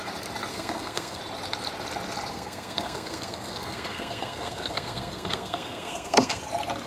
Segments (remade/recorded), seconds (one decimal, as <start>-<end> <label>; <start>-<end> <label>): 0.0-0.5 recorded; 0.5-1.2 remade; 1.2-2.3 recorded; 2.3-6.4 remade; 6.4-6.9 recorded